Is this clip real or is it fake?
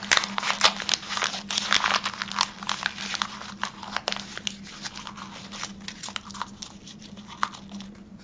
real